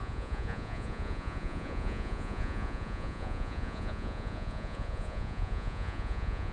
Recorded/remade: remade